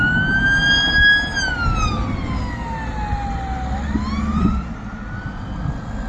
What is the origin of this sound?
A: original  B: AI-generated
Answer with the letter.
A